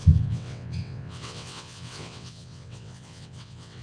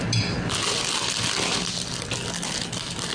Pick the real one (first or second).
second